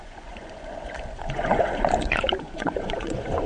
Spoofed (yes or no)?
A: yes